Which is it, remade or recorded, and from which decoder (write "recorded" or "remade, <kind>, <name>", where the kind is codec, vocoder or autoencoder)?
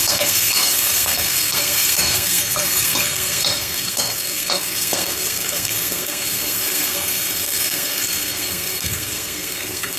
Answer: remade, codec, SNAC